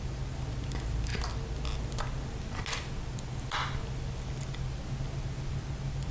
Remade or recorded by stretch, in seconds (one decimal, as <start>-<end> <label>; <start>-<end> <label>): 0.0-6.1 recorded